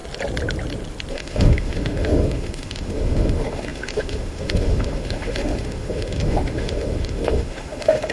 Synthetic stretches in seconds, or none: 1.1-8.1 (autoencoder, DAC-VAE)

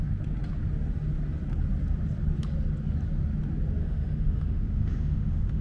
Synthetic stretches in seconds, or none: 3.8-5.6 (autoencoder, DAC-VAE)